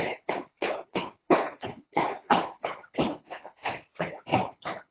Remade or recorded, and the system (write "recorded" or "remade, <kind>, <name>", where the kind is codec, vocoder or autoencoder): remade, codec, HILCodec